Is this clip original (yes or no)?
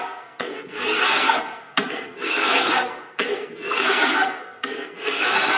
no